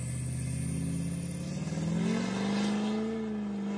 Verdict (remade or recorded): recorded